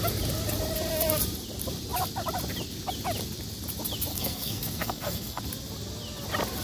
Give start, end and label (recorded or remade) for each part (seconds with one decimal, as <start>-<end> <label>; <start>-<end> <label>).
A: 0.0-4.1 recorded; 4.1-5.4 remade; 5.4-6.6 recorded